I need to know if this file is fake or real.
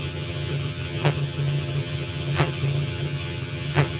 fake